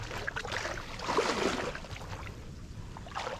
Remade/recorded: recorded